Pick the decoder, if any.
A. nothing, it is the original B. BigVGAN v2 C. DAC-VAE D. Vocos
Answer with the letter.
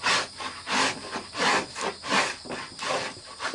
A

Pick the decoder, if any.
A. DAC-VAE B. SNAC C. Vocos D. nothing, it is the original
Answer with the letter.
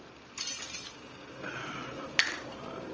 D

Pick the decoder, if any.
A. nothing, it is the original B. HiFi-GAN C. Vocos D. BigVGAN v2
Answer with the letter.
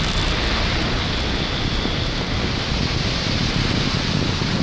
A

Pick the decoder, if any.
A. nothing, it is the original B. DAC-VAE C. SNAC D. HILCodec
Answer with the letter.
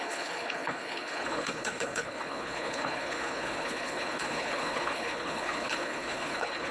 D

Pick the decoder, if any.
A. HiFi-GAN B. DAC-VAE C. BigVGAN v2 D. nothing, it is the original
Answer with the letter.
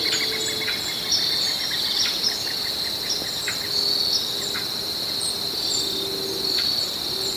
D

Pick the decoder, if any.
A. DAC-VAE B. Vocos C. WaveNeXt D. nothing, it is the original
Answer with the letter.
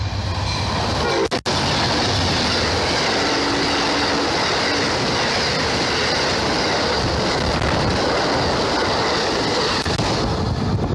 D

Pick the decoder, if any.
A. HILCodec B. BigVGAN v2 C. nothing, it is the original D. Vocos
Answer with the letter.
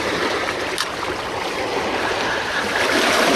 C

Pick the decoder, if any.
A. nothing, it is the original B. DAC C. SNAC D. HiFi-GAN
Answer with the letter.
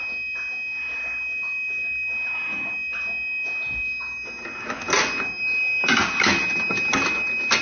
A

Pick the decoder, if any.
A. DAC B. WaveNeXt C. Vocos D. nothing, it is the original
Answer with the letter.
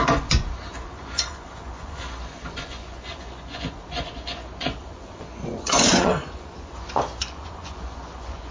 C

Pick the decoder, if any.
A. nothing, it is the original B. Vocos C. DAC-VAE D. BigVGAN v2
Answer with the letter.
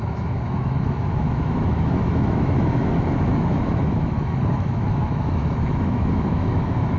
C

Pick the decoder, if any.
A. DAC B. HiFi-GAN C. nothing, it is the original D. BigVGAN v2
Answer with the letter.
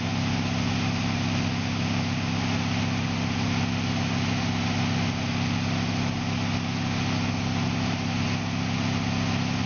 C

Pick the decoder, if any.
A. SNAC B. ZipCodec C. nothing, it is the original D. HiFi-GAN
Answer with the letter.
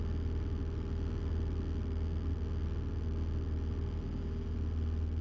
C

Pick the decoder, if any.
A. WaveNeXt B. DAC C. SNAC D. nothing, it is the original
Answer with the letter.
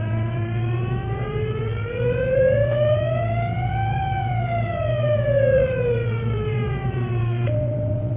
A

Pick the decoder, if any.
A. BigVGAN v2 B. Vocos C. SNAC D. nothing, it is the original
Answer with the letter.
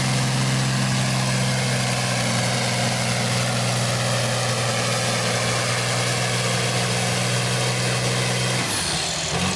D